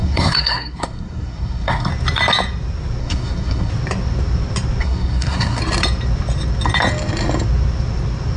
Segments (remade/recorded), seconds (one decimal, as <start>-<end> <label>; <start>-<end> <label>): 0.0-1.9 remade; 1.9-3.0 recorded; 3.0-3.7 remade; 3.7-4.8 recorded; 4.8-5.6 remade; 5.6-8.4 recorded